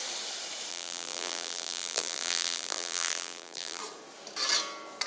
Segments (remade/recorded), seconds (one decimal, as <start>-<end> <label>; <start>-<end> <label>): 0.0-0.7 recorded; 0.7-3.8 remade; 3.8-5.1 recorded